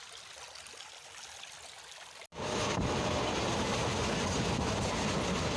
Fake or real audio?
real